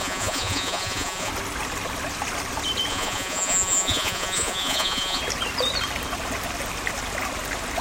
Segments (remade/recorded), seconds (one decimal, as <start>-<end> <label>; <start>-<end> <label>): 0.0-1.3 remade; 1.3-2.9 recorded; 2.9-5.2 remade; 5.2-7.8 recorded